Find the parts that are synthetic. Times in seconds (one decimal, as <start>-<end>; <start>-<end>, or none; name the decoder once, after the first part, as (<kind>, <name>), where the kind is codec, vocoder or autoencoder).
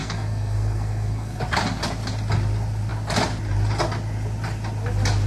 0.0-1.4 (codec, SNAC)